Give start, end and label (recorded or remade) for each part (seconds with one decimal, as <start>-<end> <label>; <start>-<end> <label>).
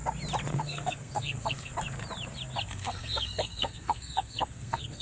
0.0-0.5 recorded; 0.5-1.7 remade; 1.7-2.7 recorded; 2.7-5.0 remade